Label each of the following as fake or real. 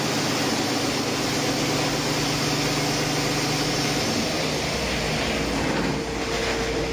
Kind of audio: real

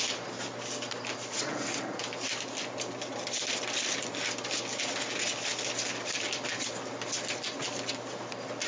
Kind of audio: real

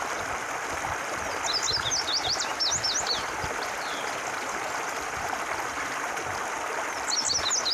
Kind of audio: real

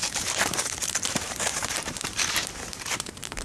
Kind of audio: fake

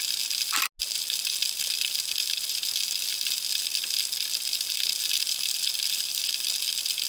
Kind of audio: real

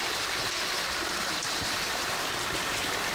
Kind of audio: fake